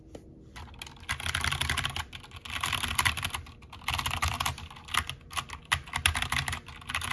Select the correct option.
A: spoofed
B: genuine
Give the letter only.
B